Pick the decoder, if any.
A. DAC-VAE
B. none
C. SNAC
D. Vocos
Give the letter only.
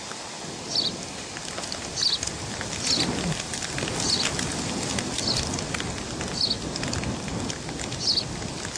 B